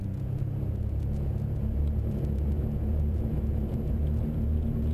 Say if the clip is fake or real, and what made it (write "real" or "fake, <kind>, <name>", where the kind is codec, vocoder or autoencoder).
fake, vocoder, Vocos